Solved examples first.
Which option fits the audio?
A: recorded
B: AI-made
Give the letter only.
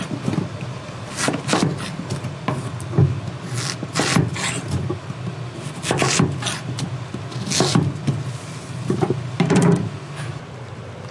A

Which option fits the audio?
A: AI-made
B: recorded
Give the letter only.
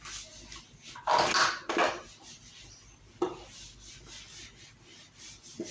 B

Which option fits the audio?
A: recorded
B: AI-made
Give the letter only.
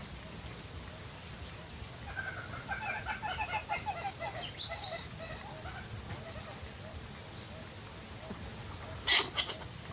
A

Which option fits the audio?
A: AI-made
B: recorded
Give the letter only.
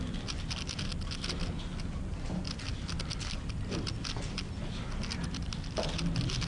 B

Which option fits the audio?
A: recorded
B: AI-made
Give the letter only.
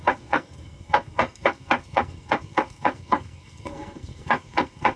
B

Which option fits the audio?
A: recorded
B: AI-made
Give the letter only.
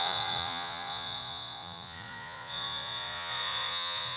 B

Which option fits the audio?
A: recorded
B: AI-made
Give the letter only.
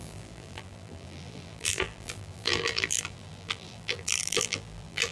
B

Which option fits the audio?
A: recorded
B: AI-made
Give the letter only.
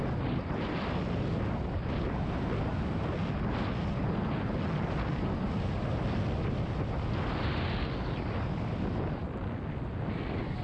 A